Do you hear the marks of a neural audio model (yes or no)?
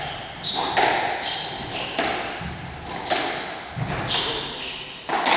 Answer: no